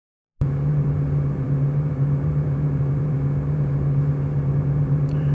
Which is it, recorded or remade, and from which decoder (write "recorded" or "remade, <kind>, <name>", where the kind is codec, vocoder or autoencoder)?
remade, vocoder, BigVGAN v2